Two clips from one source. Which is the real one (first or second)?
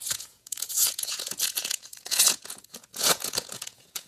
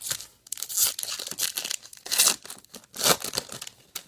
second